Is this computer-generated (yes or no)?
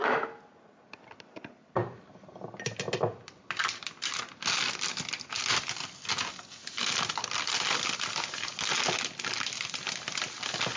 no